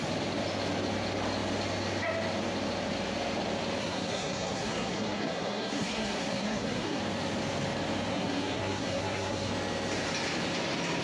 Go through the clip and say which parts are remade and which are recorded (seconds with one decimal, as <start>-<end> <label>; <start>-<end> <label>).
0.0-3.8 recorded; 3.8-7.0 remade; 7.0-8.1 recorded; 8.1-9.5 remade; 9.5-11.0 recorded

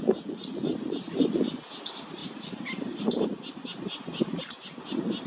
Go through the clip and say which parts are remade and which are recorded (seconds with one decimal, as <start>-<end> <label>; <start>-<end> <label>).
0.0-5.3 recorded

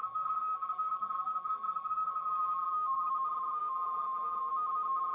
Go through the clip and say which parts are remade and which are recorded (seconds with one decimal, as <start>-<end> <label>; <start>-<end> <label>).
0.0-3.1 remade; 3.1-3.6 recorded; 3.6-4.5 remade; 4.5-5.1 recorded

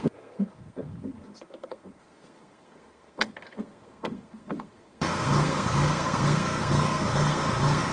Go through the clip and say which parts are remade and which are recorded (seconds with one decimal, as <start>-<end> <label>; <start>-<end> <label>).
0.0-7.9 remade

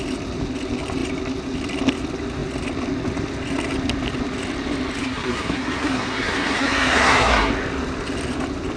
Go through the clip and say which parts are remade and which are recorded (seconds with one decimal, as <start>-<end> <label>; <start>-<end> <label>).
0.0-5.0 recorded; 5.0-7.5 remade; 7.5-8.8 recorded

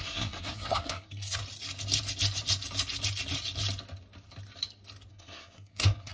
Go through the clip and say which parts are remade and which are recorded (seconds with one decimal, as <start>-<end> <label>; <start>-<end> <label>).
0.0-1.4 remade; 1.4-5.1 recorded; 5.1-6.1 remade